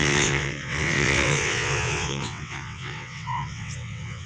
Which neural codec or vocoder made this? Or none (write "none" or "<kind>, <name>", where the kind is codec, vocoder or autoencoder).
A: vocoder, WaveNeXt